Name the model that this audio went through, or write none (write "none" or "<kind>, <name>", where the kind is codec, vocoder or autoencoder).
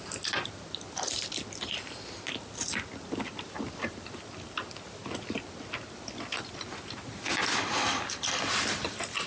none